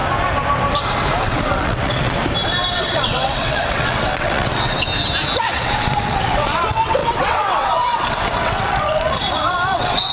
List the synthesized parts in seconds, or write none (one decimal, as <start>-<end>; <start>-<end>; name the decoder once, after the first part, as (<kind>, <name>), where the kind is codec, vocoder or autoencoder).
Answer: 1.2-2.2 (vocoder, WaveNeXt); 2.7-4.9; 5.4-10.1